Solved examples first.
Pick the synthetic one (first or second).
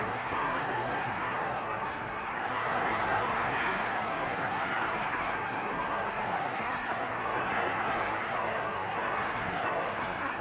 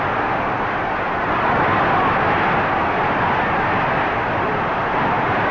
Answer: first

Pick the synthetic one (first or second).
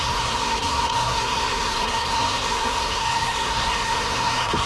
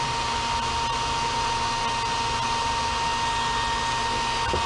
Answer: first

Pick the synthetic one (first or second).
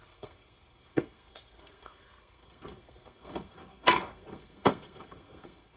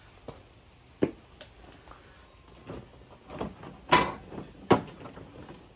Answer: first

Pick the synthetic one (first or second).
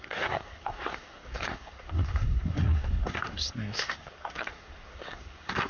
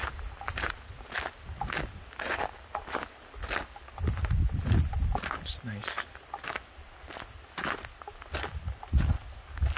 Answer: first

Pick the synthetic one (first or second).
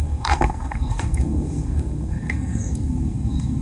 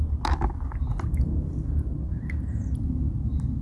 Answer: first